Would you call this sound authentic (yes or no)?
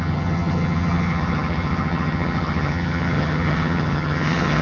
no